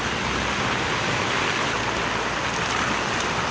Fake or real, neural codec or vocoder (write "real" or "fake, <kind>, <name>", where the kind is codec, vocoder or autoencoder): real